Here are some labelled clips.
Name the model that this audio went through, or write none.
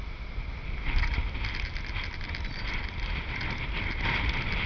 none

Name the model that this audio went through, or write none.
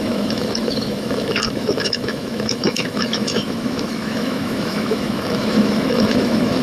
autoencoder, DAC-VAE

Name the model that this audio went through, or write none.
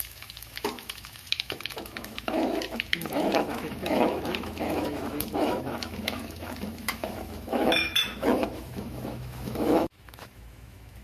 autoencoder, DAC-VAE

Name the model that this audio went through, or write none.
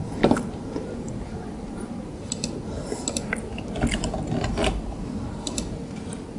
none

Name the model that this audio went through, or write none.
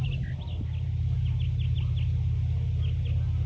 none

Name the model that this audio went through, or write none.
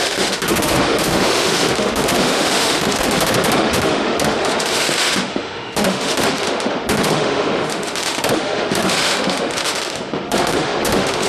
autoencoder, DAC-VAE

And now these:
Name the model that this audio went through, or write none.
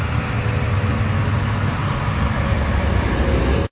none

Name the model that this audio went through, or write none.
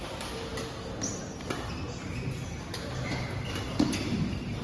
none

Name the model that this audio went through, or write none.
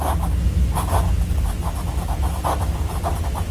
none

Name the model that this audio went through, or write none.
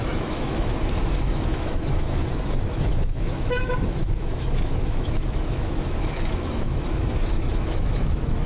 autoencoder, DAC-VAE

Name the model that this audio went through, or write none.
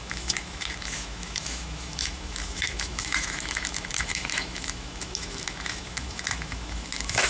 autoencoder, DAC-VAE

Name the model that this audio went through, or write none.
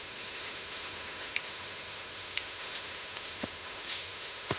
autoencoder, DAC-VAE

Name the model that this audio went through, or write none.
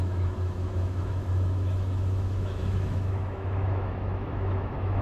autoencoder, DAC-VAE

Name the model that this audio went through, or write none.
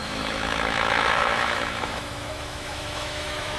autoencoder, DAC-VAE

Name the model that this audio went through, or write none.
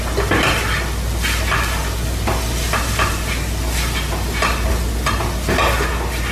none